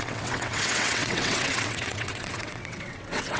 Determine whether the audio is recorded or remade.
remade